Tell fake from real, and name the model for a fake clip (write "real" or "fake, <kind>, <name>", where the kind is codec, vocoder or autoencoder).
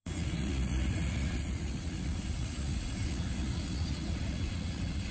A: fake, vocoder, Vocos